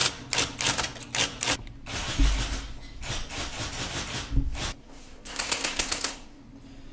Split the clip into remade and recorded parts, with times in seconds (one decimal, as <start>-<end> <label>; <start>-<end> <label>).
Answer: 0.0-4.8 recorded; 4.8-6.4 remade; 6.4-6.9 recorded